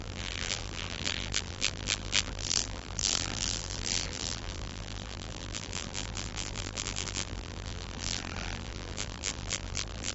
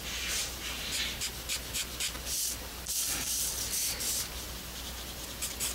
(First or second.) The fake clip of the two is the first